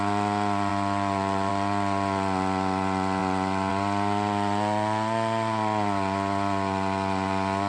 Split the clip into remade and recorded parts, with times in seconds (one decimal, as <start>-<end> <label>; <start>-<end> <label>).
0.0-7.7 recorded

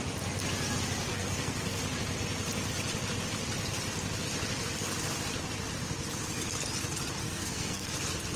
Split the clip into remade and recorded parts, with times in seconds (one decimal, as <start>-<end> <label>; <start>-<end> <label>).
0.0-1.1 recorded; 1.1-1.8 remade; 1.8-7.2 recorded; 7.2-7.9 remade; 7.9-8.4 recorded

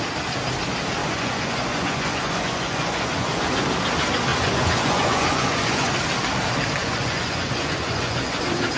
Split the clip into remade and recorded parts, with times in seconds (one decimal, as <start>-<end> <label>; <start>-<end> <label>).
0.0-1.0 recorded; 1.0-3.4 remade; 3.4-4.3 recorded; 4.3-5.9 remade; 5.9-6.8 recorded; 6.8-8.4 remade; 8.4-8.8 recorded

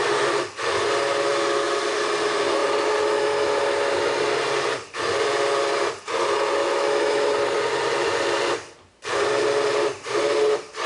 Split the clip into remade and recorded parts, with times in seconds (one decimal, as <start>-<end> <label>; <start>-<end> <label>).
0.0-6.6 recorded; 6.6-7.2 remade; 7.2-10.9 recorded

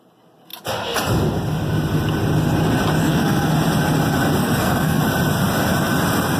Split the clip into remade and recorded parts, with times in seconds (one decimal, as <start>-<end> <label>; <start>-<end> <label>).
0.0-3.0 recorded; 3.0-3.5 remade; 3.5-4.4 recorded; 4.4-5.0 remade; 5.0-6.4 recorded